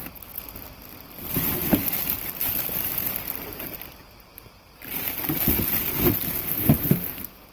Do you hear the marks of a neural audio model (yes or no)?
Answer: no